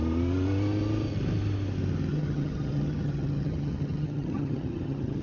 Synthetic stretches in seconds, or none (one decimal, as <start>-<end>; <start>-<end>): 2.1-5.2